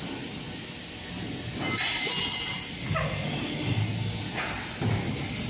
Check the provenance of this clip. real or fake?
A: real